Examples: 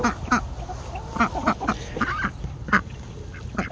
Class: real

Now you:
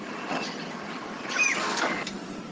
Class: fake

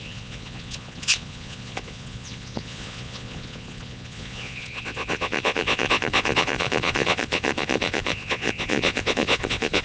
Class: fake